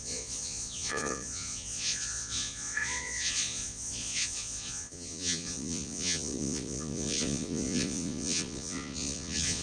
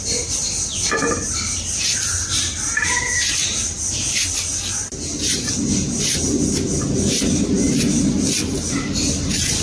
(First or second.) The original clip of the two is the second